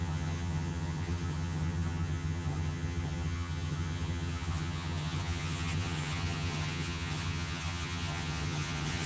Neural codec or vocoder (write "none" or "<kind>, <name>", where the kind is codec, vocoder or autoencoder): vocoder, HiFi-GAN